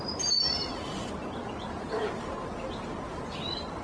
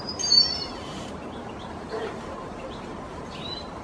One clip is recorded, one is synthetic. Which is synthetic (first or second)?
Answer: second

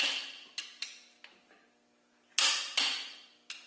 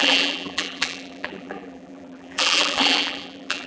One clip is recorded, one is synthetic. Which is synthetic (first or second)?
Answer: second